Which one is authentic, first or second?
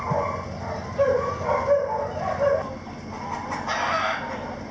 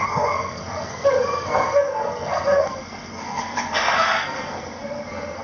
first